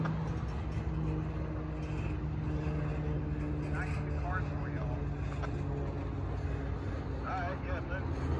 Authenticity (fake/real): real